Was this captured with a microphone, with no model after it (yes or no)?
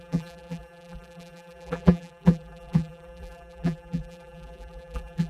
no